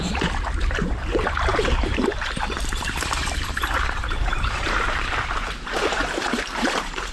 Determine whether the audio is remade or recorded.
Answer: remade